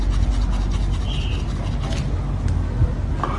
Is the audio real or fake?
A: real